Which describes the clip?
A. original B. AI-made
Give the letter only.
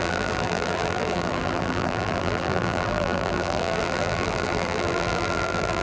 B